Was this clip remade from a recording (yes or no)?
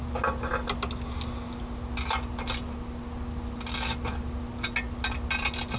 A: no